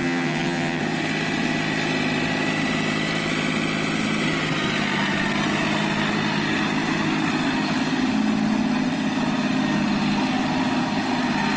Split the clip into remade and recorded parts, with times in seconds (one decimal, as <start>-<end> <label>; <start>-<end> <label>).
0.0-0.8 remade; 0.8-11.6 recorded

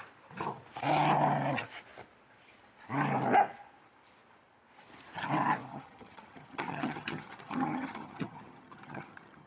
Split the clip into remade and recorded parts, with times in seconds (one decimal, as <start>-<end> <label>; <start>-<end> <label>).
0.0-5.7 recorded; 5.7-9.5 remade

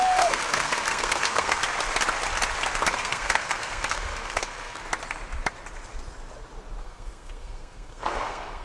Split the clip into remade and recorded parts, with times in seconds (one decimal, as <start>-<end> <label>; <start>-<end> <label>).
0.0-1.6 remade; 1.6-2.9 recorded; 2.9-4.8 remade; 4.8-6.8 recorded; 6.8-8.6 remade

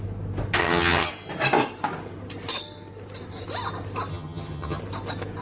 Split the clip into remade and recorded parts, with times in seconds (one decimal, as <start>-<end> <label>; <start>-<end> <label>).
0.0-0.6 recorded; 0.6-1.1 remade; 1.1-4.1 recorded; 4.1-4.8 remade; 4.8-5.4 recorded